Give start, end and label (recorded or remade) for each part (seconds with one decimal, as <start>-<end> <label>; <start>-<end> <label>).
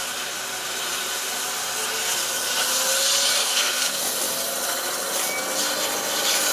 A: 0.0-3.4 recorded; 3.4-4.0 remade; 4.0-6.5 recorded